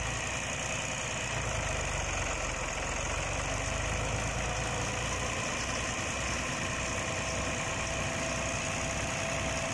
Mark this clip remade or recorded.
recorded